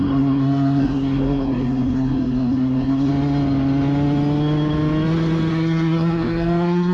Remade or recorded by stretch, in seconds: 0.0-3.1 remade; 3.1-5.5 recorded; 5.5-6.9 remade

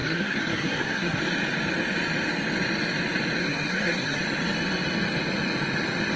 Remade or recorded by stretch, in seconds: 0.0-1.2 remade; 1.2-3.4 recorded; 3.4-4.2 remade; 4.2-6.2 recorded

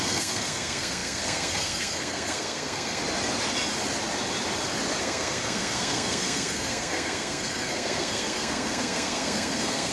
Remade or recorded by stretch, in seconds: 0.0-3.0 remade; 3.0-5.0 recorded; 5.0-9.9 remade

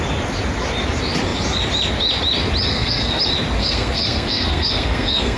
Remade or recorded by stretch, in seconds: 0.0-2.7 recorded; 2.7-3.2 remade; 3.2-3.6 recorded; 3.6-5.4 remade